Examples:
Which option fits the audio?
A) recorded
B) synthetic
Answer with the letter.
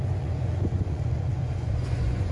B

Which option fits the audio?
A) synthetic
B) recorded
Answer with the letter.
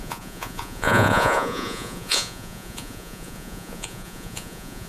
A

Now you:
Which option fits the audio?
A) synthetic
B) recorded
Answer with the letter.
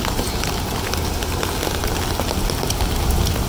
B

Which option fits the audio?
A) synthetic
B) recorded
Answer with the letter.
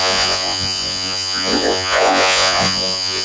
A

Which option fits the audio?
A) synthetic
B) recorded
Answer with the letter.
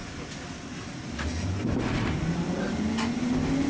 B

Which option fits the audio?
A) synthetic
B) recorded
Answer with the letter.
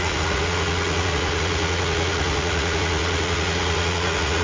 A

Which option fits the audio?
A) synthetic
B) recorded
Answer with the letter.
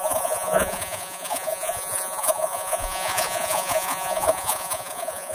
A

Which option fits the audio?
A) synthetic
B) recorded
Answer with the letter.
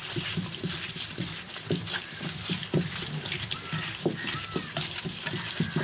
B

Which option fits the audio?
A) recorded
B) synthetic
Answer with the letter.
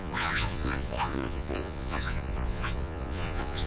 B